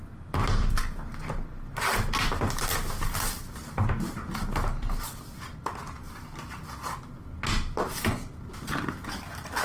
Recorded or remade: recorded